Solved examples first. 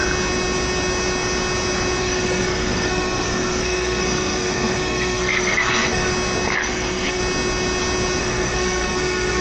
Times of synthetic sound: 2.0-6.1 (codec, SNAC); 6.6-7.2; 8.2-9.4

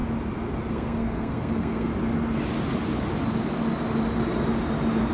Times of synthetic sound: 0.7-1.9 (codec, SNAC)